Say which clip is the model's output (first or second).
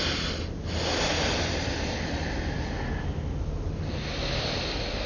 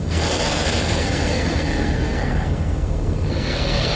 second